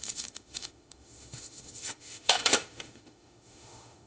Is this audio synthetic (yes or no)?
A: yes